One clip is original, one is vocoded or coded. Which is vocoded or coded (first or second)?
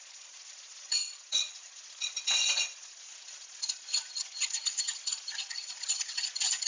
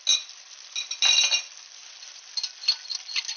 first